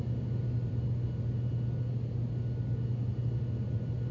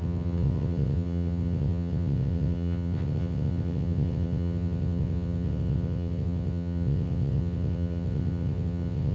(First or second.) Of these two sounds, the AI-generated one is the second